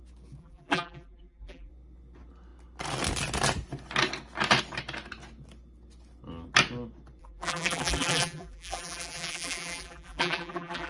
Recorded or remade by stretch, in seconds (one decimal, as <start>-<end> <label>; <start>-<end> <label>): 0.0-0.4 recorded; 0.4-1.7 remade; 1.7-7.2 recorded; 7.2-10.9 remade